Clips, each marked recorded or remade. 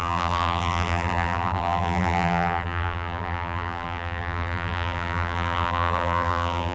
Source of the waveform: remade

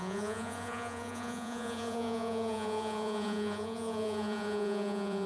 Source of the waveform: remade